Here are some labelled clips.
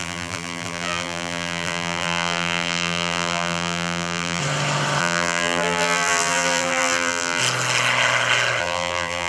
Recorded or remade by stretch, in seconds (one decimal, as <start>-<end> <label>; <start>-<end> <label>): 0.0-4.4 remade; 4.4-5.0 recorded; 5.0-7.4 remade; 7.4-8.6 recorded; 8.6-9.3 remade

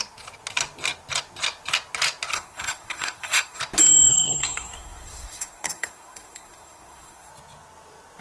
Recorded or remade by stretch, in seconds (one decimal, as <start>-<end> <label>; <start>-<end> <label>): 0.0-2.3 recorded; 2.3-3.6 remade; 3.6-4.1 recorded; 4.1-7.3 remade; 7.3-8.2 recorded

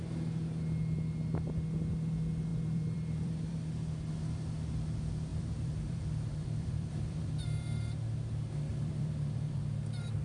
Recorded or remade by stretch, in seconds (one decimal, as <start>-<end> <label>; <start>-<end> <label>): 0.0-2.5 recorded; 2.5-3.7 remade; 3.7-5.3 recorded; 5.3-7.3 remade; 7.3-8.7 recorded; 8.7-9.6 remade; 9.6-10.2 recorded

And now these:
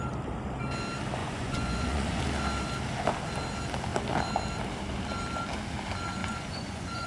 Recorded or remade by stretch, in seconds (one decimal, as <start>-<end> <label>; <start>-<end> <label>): 0.0-1.2 recorded; 1.2-2.2 remade; 2.2-6.2 recorded; 6.2-7.1 remade

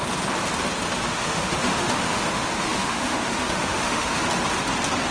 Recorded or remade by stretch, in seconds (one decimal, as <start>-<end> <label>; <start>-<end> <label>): 0.0-1.1 recorded; 1.1-4.2 remade; 4.2-5.1 recorded

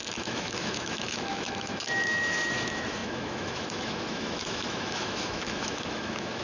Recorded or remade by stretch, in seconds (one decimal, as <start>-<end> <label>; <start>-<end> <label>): 0.0-6.4 remade

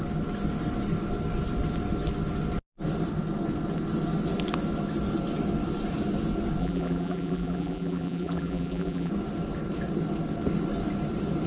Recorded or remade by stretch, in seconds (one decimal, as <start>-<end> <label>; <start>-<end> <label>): 0.0-6.6 recorded; 6.6-9.1 remade; 9.1-11.5 recorded

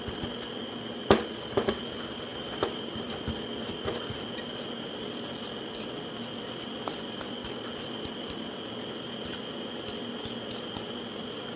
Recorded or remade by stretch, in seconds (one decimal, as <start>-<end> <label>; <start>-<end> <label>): 0.0-11.6 recorded